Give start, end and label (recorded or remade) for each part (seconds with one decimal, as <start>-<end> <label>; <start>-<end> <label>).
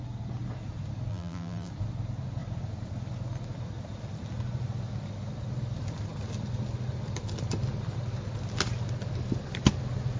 0.0-1.1 recorded; 1.1-1.7 remade; 1.7-10.2 recorded